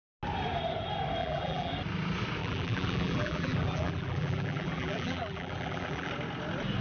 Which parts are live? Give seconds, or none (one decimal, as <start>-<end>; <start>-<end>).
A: 0.0-1.2; 1.7-2.4; 6.1-6.8